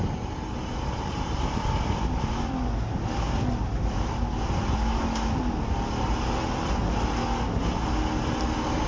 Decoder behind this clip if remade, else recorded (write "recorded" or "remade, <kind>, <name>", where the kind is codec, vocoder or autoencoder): recorded